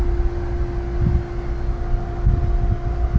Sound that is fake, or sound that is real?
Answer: real